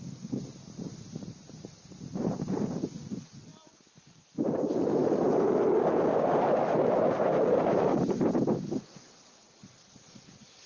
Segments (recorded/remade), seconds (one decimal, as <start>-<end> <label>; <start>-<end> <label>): 0.0-10.7 recorded